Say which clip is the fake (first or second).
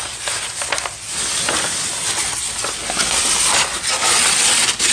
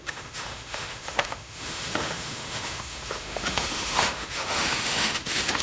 second